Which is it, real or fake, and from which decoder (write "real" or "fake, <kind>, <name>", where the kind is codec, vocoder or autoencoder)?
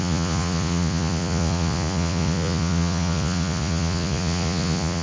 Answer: fake, vocoder, Vocos